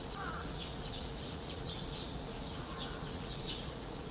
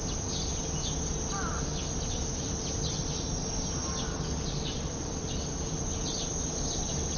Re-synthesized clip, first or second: first